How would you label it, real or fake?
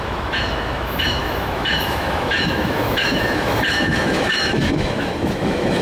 fake